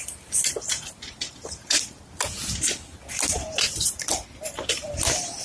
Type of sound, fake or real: real